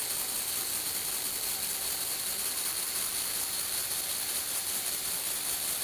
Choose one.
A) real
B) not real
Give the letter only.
A